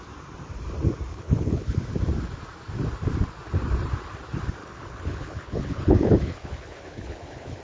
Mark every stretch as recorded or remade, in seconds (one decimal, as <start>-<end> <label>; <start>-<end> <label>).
0.0-1.1 recorded; 1.1-1.8 remade; 1.8-4.6 recorded; 4.6-7.6 remade